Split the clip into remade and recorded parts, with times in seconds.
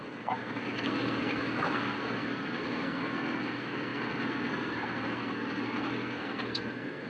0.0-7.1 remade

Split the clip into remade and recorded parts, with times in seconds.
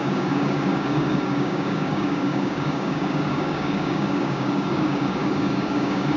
0.0-6.2 remade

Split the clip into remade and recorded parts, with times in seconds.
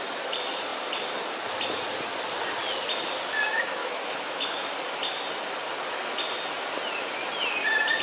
0.0-3.8 recorded; 3.8-4.7 remade; 4.7-8.0 recorded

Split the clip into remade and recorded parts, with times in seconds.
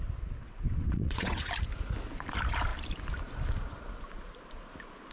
0.0-0.4 recorded; 0.4-1.5 remade; 1.5-5.1 recorded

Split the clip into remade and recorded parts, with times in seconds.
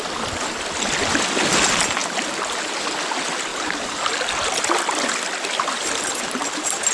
0.0-6.9 recorded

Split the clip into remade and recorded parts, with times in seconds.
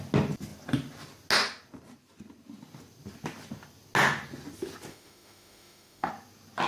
0.0-4.9 recorded; 4.9-6.1 remade; 6.1-6.7 recorded